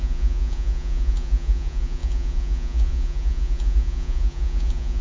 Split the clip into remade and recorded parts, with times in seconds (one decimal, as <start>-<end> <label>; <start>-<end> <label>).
0.0-5.0 remade